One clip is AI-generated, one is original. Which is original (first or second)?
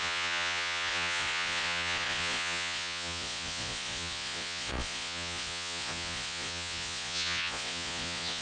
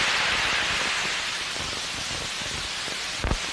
second